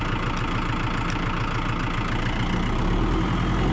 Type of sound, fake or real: real